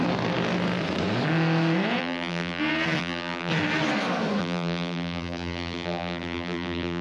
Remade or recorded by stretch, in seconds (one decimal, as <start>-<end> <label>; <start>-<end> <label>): 0.0-2.0 recorded; 2.0-2.6 remade; 2.6-3.0 recorded; 3.0-3.5 remade; 3.5-4.4 recorded; 4.4-7.0 remade